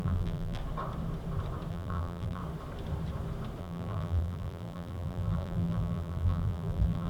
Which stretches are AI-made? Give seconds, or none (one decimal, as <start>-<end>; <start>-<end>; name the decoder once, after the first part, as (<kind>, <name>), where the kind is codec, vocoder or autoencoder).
0.0-0.6 (vocoder, BigVGAN v2); 1.7-2.4; 3.6-7.1

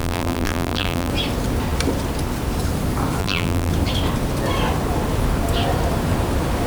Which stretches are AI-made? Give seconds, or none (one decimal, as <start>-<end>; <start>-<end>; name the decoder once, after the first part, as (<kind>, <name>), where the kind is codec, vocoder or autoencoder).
0.0-1.1 (vocoder, BigVGAN v2); 3.2-3.7

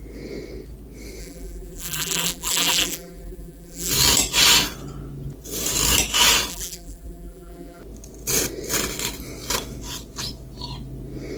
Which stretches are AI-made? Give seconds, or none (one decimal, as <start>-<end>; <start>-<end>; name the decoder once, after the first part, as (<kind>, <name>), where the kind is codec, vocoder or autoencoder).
1.2-3.9 (vocoder, BigVGAN v2); 6.5-7.8

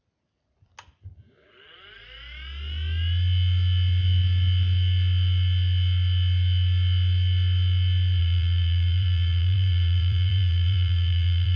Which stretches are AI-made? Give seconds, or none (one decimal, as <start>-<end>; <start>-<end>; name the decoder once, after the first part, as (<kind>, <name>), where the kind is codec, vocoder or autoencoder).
8.2-11.6 (vocoder, BigVGAN v2)